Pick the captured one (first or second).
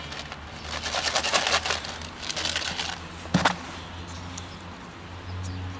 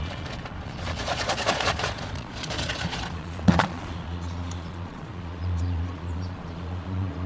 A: first